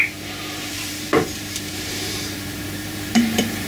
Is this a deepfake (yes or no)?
yes